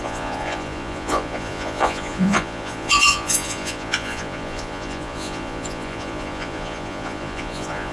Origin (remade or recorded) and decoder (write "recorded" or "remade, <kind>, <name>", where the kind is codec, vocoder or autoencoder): remade, vocoder, Vocos